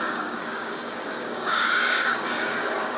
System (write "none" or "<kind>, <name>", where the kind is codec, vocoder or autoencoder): codec, DAC